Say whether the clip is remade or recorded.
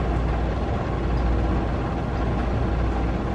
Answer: recorded